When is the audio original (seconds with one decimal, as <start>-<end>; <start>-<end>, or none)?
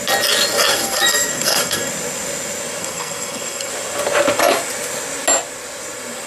0.0-0.7; 1.9-2.8; 3.7-6.3